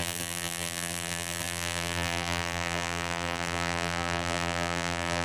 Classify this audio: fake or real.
fake